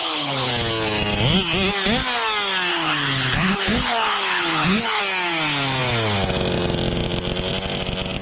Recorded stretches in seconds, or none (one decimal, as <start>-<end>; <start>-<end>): 0.5-2.7; 5.0-8.2